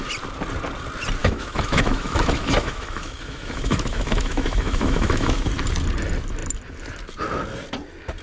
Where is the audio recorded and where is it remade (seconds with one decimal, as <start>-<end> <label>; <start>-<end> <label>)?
0.0-1.2 recorded; 1.2-5.5 remade; 5.5-8.2 recorded